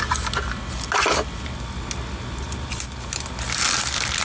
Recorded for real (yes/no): yes